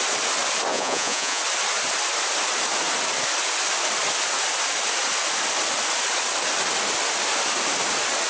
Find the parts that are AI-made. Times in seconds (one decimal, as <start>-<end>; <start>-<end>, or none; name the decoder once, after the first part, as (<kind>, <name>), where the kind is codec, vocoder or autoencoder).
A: 0.7-1.4 (vocoder, Vocos)